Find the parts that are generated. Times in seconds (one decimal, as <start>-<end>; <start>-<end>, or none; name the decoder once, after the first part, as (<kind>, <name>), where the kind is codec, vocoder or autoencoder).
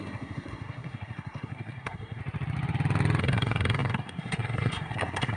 0.0-2.2 (codec, SNAC); 3.2-5.4